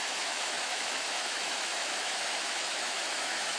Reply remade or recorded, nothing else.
remade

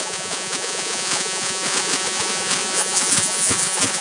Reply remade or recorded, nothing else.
remade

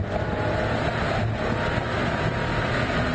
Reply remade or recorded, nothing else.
recorded